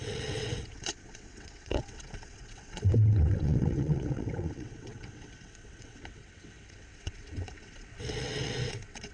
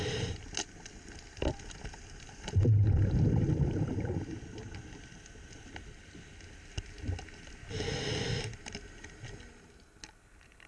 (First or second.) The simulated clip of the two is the first